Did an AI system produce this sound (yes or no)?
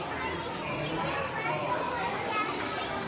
no